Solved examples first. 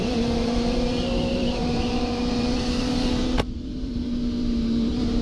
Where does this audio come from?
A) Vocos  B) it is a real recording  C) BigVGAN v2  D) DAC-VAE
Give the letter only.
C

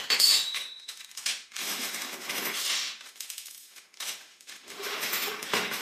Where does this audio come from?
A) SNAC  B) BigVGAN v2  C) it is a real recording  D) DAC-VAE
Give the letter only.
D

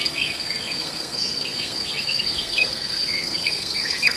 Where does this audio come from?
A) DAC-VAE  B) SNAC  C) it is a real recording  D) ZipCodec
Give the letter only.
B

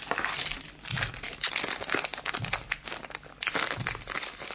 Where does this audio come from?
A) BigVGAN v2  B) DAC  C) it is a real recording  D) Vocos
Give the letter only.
C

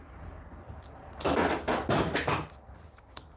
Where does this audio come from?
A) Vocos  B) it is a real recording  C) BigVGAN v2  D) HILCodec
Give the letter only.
B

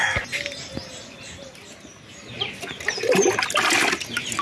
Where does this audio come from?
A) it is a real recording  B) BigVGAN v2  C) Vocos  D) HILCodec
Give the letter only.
A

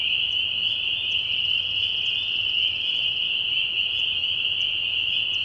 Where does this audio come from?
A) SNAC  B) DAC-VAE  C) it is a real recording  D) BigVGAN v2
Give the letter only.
C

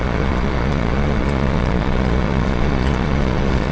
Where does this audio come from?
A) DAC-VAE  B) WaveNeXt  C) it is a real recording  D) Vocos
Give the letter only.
D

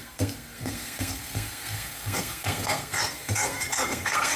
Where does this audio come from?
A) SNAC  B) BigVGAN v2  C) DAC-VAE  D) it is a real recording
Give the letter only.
A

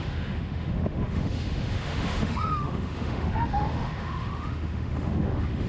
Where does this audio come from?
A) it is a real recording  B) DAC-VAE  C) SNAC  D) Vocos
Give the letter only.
B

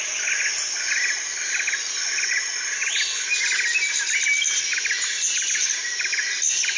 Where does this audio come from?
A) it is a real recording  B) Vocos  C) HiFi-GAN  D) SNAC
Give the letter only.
A